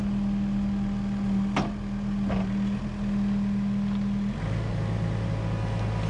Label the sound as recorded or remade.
recorded